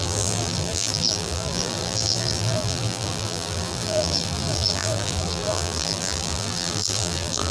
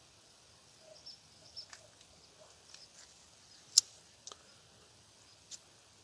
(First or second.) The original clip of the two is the second